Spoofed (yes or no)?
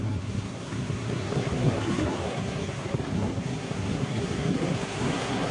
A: yes